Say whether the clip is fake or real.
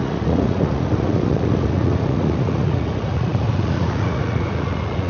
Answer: fake